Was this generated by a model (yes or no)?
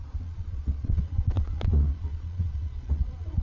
yes